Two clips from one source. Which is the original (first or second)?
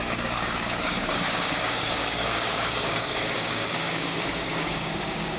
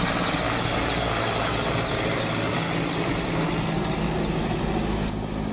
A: second